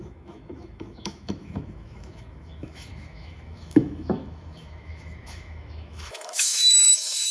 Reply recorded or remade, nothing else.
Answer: remade